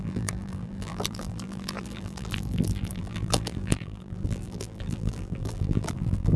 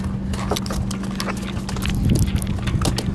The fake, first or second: first